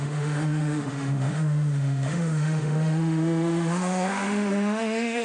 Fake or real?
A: fake